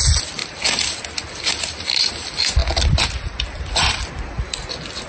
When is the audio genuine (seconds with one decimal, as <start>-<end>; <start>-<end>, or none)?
0.0-2.6; 3.9-5.1